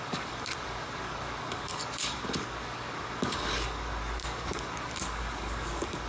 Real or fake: fake